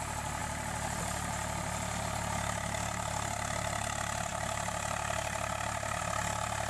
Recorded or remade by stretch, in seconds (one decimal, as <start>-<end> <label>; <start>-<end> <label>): 0.0-6.7 recorded